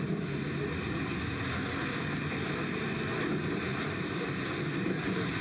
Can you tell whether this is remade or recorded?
recorded